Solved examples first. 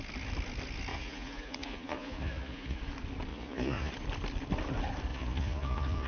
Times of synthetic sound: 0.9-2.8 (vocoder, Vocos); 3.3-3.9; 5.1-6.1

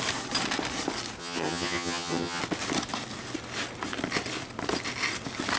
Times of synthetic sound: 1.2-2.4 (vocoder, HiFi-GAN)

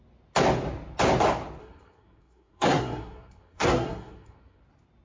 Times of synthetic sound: 1.6-4.6 (codec, SNAC)

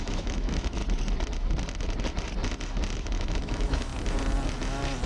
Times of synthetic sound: 0.0-0.8 (autoencoder, DAC-VAE); 3.0-3.9

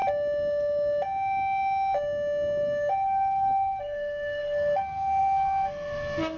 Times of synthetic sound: 3.8-6.4 (codec, SNAC)